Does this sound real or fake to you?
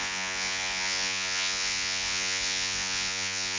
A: fake